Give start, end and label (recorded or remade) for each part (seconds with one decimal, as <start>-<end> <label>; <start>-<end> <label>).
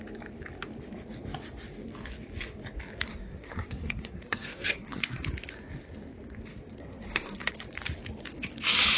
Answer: 0.0-3.1 recorded; 3.1-5.2 remade; 5.2-6.8 recorded; 6.8-7.5 remade; 7.5-9.0 recorded